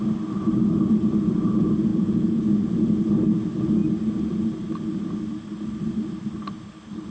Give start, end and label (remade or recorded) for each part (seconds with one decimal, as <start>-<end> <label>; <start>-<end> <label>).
0.0-1.9 recorded; 1.9-2.4 remade; 2.4-7.1 recorded